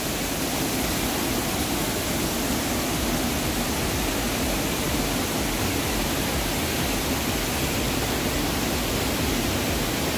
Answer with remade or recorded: recorded